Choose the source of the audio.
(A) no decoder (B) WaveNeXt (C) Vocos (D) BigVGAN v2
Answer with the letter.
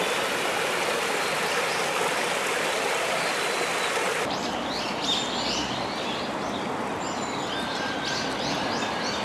A